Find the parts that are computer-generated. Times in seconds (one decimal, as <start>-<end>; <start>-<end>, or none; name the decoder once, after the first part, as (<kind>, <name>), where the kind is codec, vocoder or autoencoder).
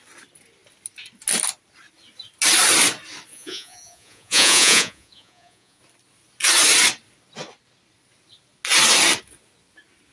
3.3-5.8 (vocoder, Vocos)